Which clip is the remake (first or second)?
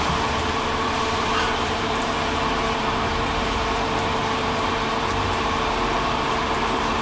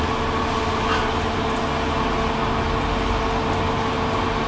first